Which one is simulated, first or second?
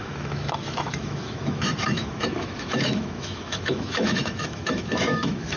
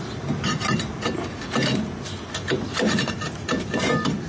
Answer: first